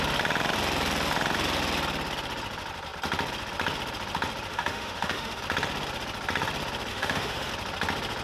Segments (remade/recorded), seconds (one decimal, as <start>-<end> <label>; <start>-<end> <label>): 0.0-4.5 recorded; 4.5-5.4 remade; 5.4-6.9 recorded; 6.9-7.5 remade; 7.5-8.2 recorded